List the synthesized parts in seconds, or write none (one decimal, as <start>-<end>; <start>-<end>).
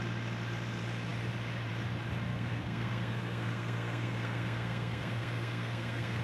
2.3-6.2